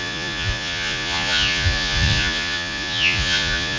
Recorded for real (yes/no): no